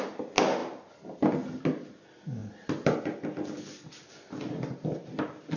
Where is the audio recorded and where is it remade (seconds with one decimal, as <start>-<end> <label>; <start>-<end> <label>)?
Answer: 0.0-5.6 recorded